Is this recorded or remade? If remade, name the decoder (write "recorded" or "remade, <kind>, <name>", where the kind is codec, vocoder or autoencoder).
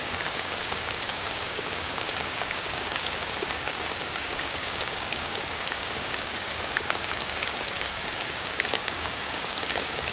remade, codec, DAC